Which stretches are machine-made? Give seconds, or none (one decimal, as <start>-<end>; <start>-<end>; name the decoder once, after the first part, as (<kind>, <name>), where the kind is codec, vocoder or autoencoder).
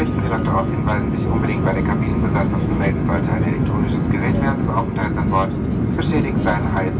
2.1-2.9 (autoencoder, DAC-VAE)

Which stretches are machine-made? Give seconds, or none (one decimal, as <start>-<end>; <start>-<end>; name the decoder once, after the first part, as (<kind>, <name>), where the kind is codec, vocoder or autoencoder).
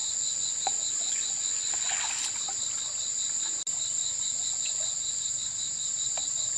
0.0-2.0 (vocoder, Vocos); 4.0-5.3